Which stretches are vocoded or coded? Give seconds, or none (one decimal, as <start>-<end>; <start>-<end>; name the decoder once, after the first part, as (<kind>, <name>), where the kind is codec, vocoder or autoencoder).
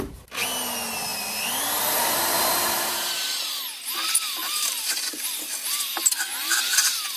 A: 1.1-3.1 (vocoder, BigVGAN v2); 4.4-5.4